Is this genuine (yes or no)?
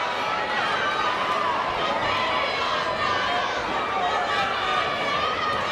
yes